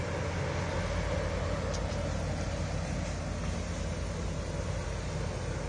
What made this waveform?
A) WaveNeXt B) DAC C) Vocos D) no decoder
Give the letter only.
D